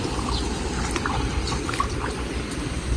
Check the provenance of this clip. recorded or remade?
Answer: recorded